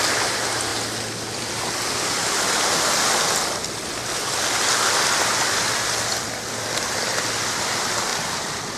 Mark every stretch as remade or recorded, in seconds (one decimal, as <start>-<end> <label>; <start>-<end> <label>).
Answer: 0.0-8.8 recorded